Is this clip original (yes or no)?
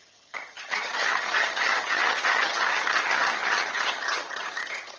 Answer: no